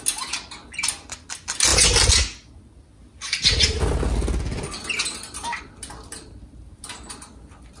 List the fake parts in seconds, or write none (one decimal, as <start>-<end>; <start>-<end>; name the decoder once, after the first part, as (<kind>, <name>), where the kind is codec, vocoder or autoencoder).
none